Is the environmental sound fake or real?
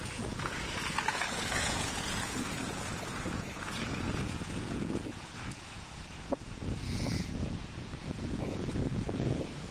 fake